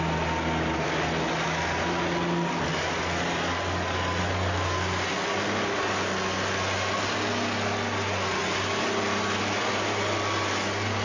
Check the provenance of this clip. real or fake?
real